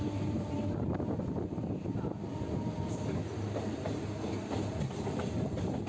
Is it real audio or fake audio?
real